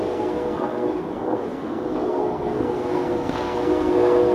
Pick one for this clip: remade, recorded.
remade